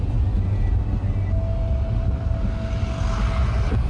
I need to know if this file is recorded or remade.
recorded